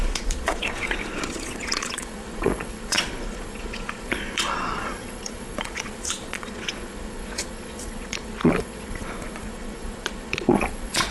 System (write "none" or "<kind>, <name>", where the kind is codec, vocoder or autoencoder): vocoder, Vocos